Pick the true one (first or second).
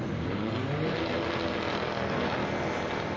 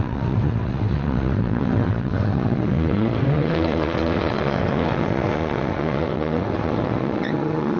first